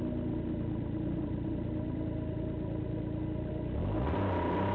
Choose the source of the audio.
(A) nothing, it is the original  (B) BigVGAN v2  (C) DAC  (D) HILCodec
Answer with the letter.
A